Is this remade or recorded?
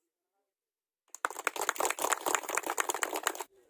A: recorded